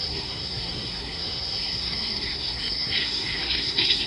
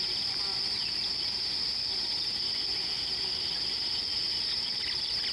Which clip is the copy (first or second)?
first